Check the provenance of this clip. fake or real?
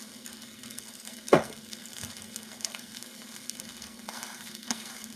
fake